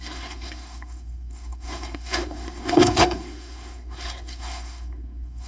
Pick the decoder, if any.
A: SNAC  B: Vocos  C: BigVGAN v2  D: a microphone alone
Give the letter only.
A